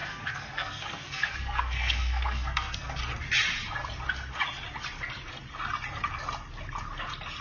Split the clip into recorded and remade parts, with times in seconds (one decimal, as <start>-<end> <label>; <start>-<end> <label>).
0.0-3.0 remade; 3.0-7.4 recorded